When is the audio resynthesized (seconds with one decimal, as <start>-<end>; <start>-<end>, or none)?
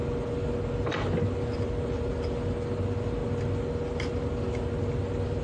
none